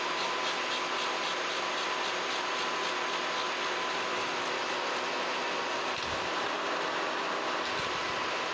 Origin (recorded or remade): recorded